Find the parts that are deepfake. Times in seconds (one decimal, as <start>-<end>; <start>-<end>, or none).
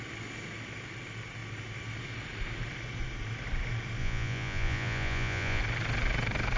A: 4.0-5.6